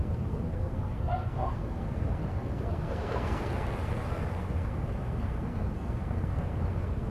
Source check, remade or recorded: remade